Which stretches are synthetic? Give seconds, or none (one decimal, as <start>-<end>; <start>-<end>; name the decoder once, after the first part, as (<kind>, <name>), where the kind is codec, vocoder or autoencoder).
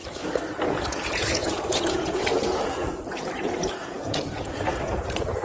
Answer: 0.6-5.4 (vocoder, Vocos)